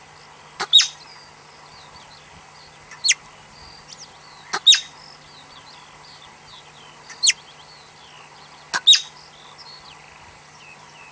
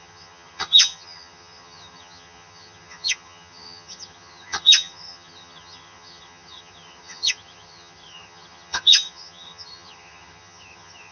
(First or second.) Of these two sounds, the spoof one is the second